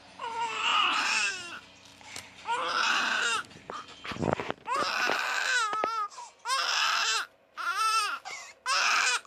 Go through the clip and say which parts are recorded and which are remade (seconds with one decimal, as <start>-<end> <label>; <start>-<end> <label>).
0.0-0.7 recorded; 0.7-1.3 remade; 1.3-7.7 recorded; 7.7-8.6 remade; 8.6-9.3 recorded